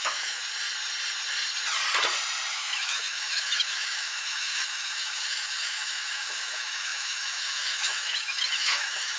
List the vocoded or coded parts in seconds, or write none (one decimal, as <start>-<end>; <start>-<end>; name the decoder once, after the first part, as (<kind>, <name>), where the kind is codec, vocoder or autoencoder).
0.0-0.4 (autoencoder, DAC-VAE); 2.5-9.2